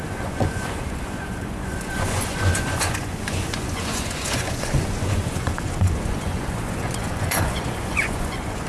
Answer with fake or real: fake